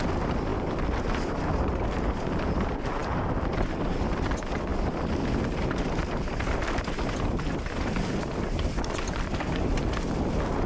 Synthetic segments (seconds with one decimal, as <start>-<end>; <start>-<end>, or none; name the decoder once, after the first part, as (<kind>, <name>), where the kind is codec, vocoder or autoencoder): 0.5-2.5 (vocoder, BigVGAN v2)